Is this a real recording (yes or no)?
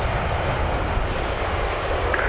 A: yes